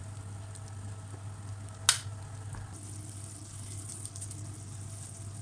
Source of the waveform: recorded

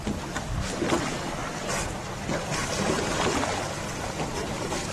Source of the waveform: remade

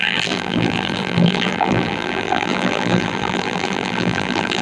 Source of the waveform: remade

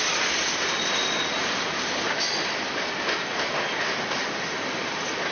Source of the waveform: recorded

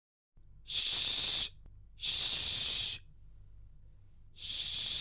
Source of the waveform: recorded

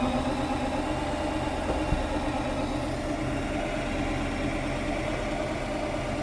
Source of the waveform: recorded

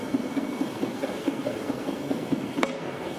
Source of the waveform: remade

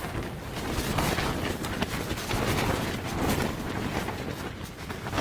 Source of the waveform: recorded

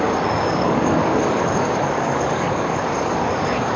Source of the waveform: remade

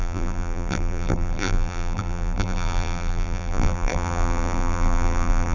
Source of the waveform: remade